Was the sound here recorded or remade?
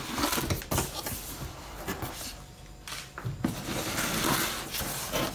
recorded